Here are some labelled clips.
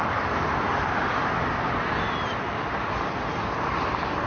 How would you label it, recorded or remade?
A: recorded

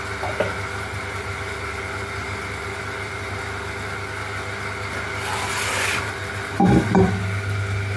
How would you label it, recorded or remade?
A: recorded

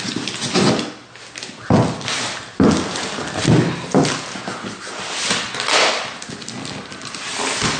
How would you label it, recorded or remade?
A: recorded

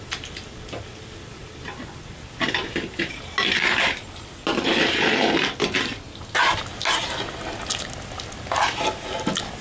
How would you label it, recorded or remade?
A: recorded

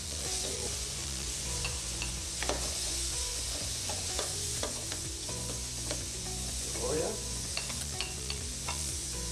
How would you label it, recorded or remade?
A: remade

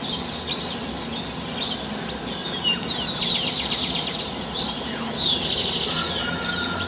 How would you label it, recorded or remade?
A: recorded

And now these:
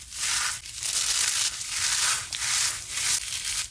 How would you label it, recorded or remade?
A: recorded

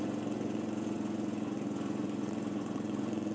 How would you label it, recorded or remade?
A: remade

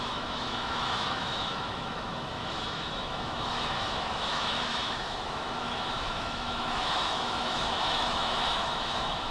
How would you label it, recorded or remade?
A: remade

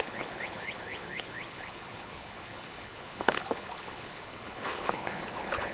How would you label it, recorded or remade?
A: remade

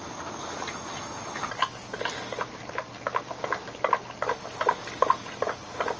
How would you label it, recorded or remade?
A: recorded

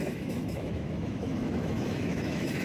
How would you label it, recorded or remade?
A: remade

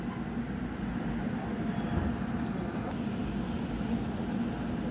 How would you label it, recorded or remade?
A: recorded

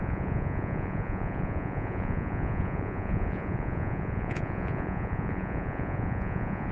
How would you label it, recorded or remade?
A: remade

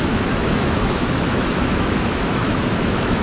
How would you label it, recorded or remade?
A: remade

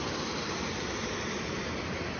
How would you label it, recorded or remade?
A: recorded